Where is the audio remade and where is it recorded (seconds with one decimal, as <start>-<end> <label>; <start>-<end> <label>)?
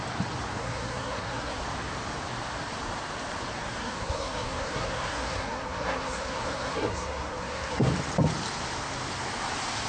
0.0-0.6 recorded; 0.6-1.6 remade; 1.6-3.8 recorded; 3.8-7.9 remade; 7.9-9.9 recorded